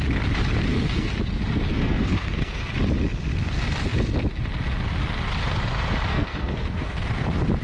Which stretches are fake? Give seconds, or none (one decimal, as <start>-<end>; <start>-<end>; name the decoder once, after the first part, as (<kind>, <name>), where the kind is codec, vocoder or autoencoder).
0.7-1.2 (codec, SNAC); 1.7-2.7; 6.1-7.0